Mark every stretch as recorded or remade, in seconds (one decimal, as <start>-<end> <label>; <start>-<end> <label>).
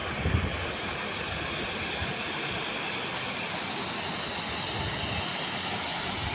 0.0-6.3 recorded